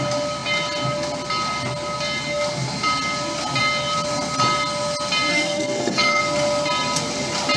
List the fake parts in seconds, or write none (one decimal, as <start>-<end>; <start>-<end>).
5.3-6.2